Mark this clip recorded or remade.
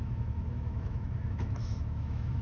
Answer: remade